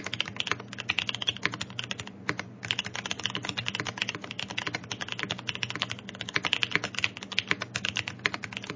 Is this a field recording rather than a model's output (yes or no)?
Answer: yes